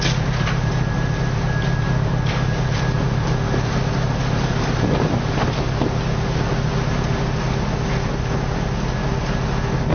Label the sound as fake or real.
real